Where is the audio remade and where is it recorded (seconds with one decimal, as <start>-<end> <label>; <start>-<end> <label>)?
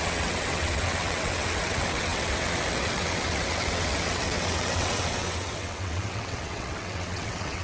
0.0-7.6 remade